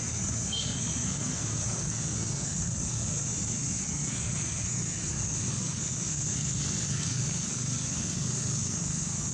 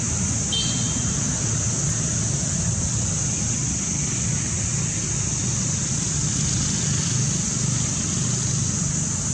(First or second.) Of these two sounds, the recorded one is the second